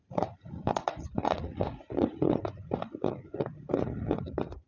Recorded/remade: remade